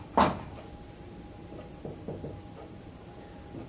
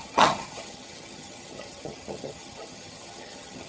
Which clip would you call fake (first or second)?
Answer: second